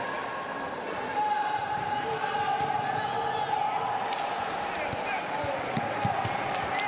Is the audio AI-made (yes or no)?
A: no